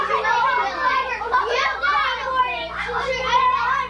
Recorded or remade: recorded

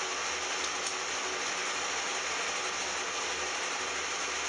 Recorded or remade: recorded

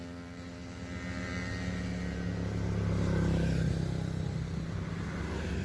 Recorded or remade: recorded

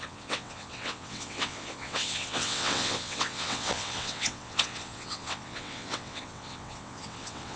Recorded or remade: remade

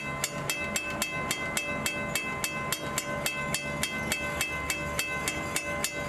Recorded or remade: recorded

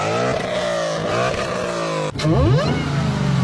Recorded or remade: recorded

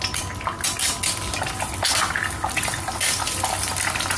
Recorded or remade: recorded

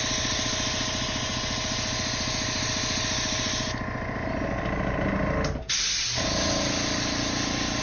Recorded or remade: recorded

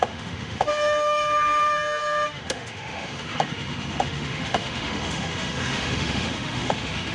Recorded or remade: remade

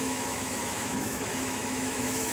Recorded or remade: remade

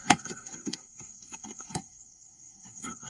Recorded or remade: remade